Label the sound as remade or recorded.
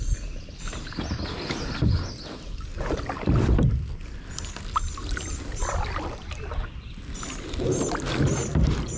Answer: recorded